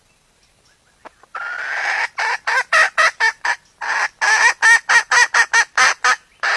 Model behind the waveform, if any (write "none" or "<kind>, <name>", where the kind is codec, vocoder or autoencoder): none